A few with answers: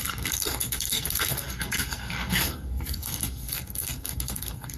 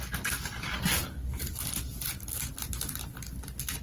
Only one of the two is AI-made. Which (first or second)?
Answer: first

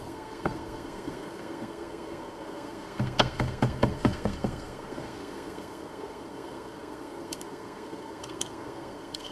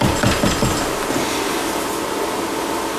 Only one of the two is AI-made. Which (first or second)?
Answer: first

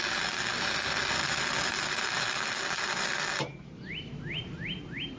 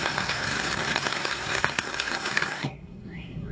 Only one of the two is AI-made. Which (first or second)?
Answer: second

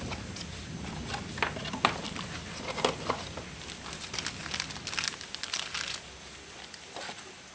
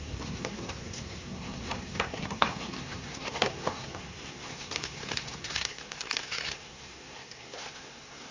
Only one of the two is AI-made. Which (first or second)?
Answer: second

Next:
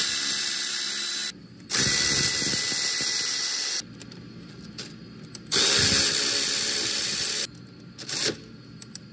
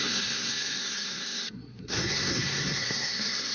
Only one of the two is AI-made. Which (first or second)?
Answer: second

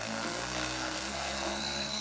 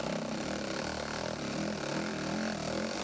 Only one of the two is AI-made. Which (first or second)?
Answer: first